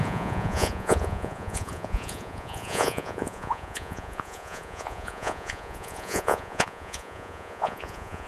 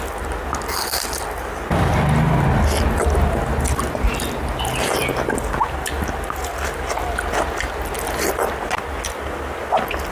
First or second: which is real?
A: second